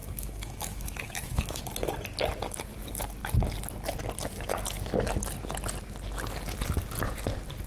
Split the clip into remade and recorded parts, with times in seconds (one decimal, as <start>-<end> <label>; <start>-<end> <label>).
0.0-1.6 remade; 1.6-7.7 recorded